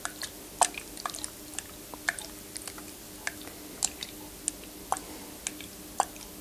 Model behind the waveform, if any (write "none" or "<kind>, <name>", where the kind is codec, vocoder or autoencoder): none